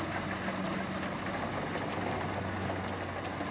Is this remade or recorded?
recorded